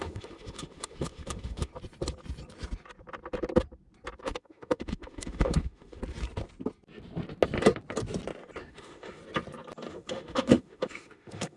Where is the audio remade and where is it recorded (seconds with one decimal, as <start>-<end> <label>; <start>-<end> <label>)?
0.0-1.7 remade; 1.7-4.2 recorded; 4.2-6.0 remade; 6.0-8.6 recorded; 8.6-9.2 remade; 9.2-9.9 recorded; 9.9-11.6 remade